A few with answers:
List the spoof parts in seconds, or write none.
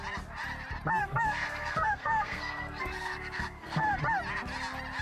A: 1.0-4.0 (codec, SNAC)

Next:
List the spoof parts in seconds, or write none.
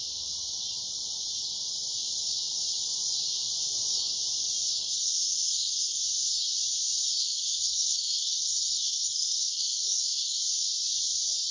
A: 4.8-6.0 (codec, SNAC); 7.2-10.4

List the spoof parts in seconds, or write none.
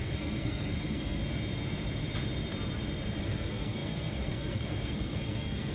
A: 0.0-1.2 (codec, SNAC); 3.2-5.7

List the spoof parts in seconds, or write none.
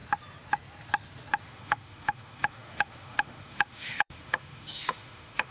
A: 1.4-5.5 (autoencoder, DAC-VAE)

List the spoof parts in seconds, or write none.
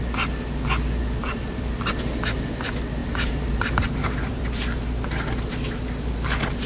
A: 1.2-2.0 (vocoder, BigVGAN v2); 3.0-4.4